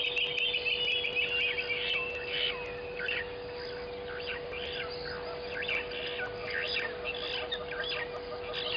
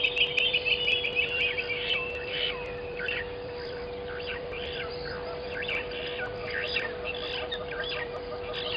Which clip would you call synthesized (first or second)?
second